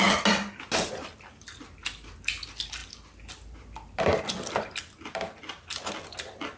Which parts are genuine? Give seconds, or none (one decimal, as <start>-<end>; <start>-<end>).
0.0-6.6